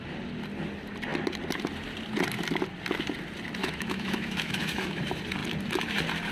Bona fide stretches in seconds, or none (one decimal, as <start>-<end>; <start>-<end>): 0.0-3.6; 5.0-6.3

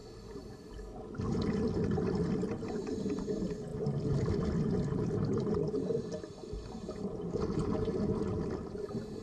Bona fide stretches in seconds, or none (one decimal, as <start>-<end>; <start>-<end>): 0.0-9.2

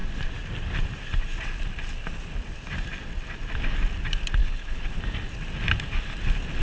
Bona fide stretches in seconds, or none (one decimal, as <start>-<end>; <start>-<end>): 0.0-4.4; 4.9-6.6